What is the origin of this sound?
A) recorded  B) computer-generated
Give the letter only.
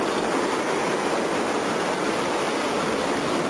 A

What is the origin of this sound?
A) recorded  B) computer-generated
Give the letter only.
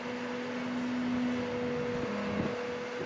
A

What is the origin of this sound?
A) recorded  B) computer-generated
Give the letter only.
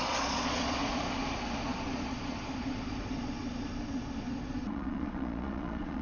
B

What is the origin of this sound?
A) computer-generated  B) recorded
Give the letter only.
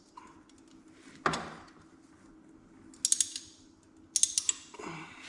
B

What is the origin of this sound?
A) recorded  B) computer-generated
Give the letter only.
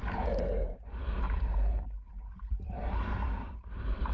B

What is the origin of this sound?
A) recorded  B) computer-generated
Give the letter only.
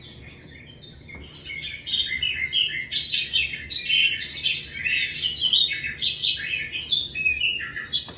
A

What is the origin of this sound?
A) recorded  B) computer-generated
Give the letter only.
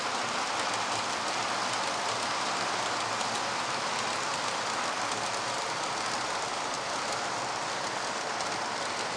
A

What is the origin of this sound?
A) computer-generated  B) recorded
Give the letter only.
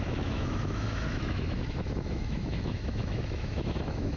A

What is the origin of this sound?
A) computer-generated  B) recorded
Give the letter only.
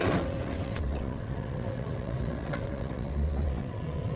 A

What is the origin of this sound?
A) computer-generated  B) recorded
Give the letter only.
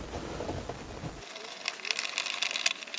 B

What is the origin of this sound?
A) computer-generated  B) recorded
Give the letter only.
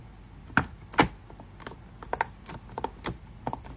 B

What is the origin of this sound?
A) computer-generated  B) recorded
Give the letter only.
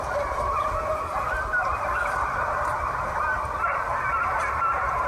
B